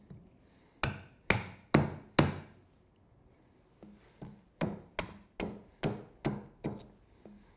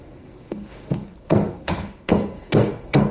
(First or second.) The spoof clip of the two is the second